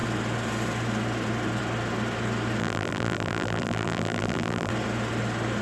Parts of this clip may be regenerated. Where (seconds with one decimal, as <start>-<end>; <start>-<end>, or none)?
2.6-4.7